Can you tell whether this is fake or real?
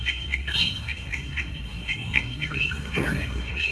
fake